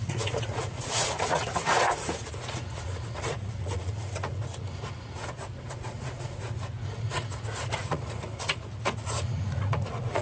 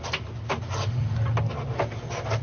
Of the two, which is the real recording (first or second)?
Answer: second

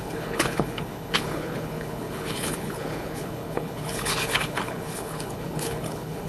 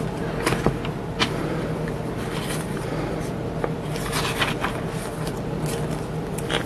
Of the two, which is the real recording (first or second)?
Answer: second